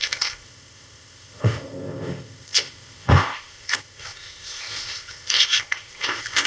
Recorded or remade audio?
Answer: remade